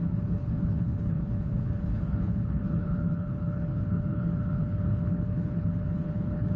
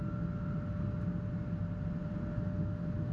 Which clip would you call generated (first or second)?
first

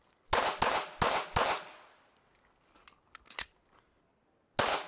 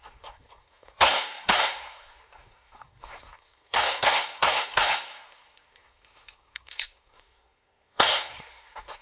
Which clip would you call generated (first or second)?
second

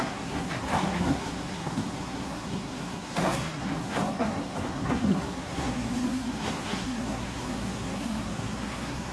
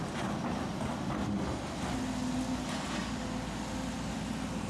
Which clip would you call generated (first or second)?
first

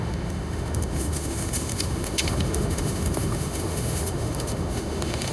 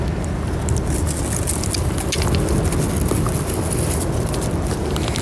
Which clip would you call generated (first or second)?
first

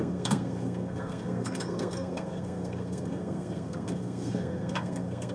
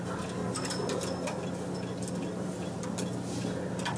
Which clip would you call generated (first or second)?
first